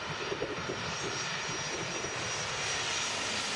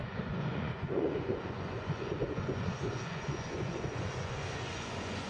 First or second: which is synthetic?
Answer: second